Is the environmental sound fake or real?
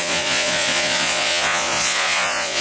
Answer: fake